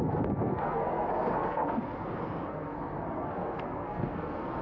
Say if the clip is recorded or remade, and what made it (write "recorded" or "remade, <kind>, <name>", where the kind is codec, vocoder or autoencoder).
remade, codec, SNAC